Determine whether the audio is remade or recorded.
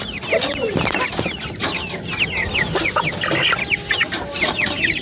recorded